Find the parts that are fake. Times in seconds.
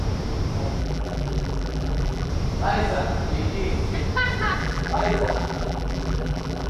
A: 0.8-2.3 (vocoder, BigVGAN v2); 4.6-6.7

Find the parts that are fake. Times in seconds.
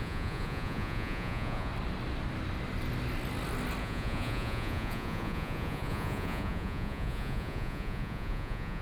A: 0.0-1.7 (vocoder, Vocos); 3.8-8.8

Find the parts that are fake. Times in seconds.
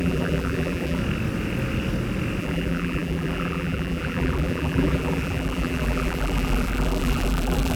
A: 0.0-1.0 (vocoder, BigVGAN v2); 2.4-7.8